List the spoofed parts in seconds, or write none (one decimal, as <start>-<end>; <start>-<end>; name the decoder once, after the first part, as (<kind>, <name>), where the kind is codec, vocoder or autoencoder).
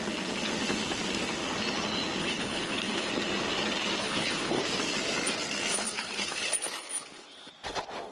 2.2-3.1 (codec, HILCodec); 4.0-4.6; 5.7-7.5